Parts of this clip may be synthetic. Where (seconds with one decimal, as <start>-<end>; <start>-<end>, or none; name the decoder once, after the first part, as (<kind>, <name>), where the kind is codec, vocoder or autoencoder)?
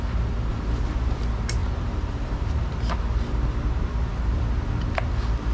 0.5-1.2 (vocoder, BigVGAN v2); 1.6-2.7